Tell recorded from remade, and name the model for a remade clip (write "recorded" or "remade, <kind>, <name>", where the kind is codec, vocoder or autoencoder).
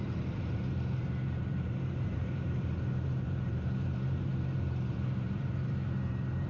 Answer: remade, vocoder, BigVGAN v2